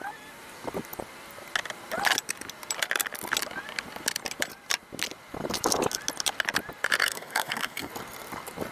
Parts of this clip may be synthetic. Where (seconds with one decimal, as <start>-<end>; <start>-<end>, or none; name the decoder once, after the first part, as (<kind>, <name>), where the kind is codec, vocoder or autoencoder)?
7.0-7.9 (codec, SNAC)